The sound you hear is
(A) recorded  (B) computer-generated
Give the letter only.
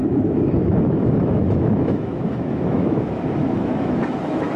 B